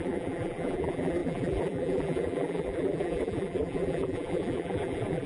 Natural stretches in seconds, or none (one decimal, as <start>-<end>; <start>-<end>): none